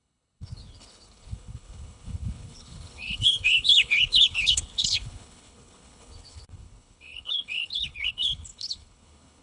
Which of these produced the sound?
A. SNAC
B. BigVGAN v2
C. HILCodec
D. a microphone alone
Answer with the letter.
C